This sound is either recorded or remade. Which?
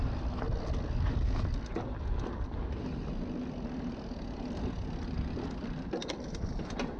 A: recorded